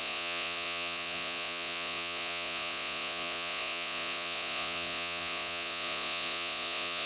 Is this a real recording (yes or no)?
no